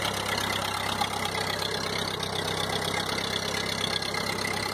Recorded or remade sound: recorded